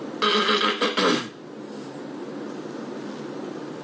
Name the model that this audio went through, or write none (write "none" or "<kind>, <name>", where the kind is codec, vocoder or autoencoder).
none